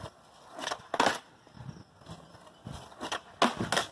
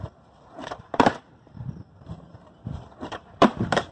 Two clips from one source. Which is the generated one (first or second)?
second